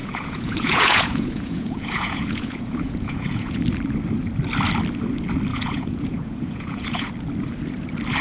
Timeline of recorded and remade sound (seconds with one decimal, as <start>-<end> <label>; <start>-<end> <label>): 0.0-3.6 remade; 3.6-5.5 recorded; 5.5-7.1 remade; 7.1-8.2 recorded